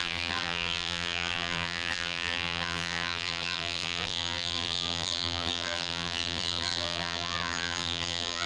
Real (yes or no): no